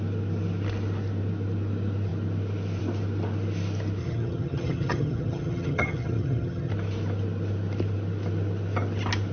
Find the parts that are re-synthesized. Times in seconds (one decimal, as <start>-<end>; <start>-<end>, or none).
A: 4.0-6.7